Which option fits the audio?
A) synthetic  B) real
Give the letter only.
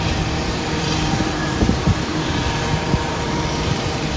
A